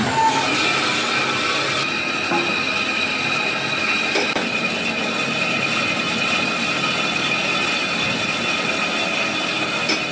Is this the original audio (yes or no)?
yes